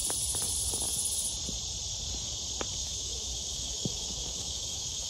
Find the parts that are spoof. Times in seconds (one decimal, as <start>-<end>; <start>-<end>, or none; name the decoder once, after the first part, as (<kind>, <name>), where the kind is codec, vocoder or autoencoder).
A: 2.8-5.1 (autoencoder, DAC-VAE)